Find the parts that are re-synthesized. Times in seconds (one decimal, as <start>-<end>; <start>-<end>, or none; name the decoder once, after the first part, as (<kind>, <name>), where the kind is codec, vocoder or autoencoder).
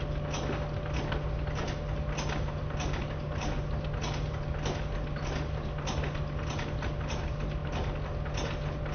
none